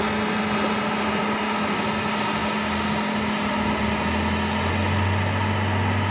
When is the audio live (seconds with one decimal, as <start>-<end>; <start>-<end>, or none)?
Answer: 0.0-6.1